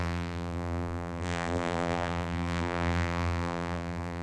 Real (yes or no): no